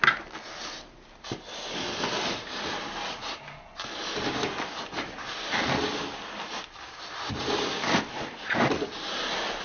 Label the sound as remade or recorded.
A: recorded